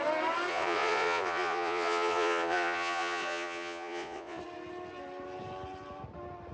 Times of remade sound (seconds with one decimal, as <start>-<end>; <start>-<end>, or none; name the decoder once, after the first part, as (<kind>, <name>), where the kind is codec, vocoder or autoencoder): 0.5-4.4 (vocoder, Vocos)